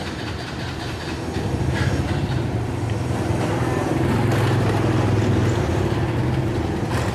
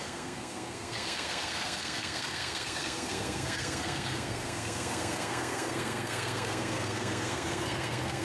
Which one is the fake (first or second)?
second